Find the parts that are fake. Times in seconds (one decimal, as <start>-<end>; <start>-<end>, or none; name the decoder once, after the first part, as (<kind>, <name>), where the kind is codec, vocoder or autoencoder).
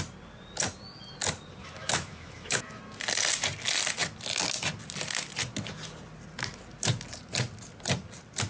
1.6-2.8 (autoencoder, DAC-VAE)